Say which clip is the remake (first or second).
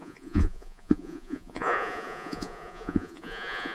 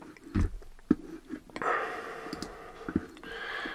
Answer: first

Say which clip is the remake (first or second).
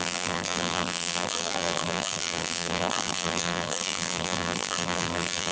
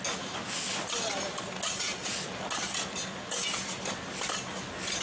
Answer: first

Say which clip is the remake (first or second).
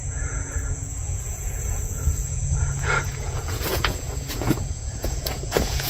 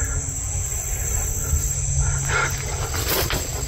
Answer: first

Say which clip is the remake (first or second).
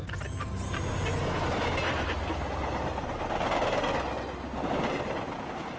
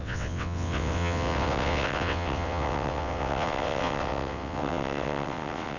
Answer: second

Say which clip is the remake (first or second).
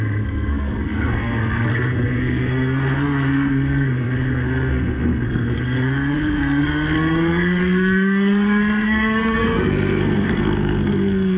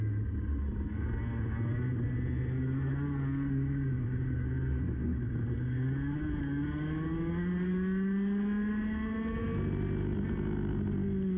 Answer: first